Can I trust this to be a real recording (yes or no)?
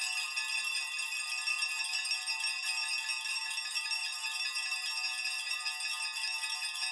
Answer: yes